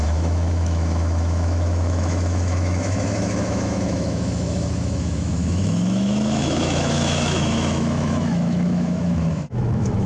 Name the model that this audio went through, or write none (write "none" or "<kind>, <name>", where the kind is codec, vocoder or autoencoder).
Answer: autoencoder, DAC-VAE